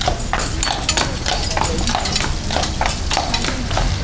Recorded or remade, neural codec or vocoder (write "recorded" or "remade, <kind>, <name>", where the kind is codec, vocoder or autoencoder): recorded